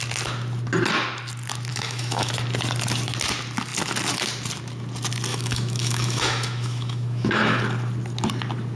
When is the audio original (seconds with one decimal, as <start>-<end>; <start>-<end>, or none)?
0.0-1.7; 2.3-5.3; 7.6-8.8